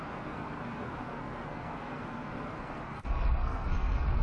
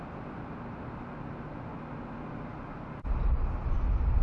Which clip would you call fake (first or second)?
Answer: first